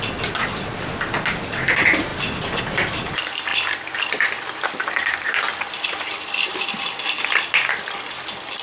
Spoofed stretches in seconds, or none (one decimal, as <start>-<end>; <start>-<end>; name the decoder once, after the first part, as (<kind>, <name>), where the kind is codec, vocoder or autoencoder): none